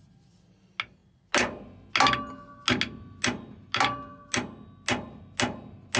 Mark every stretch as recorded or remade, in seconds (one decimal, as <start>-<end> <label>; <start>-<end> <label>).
0.0-6.0 recorded